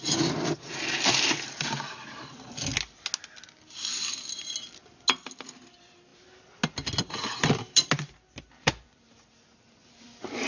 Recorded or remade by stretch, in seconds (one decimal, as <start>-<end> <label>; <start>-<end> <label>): 0.0-2.7 remade; 2.7-3.9 recorded; 3.9-4.8 remade; 4.8-5.5 recorded; 5.5-6.1 remade; 6.1-7.0 recorded; 7.0-10.5 remade